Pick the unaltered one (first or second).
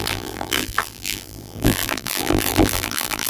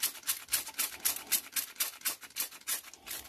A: second